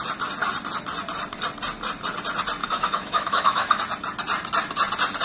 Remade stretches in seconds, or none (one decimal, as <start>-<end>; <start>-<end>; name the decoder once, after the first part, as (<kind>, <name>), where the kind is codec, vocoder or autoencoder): 2.6-3.8 (autoencoder, DAC-VAE)